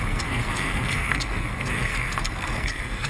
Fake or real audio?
fake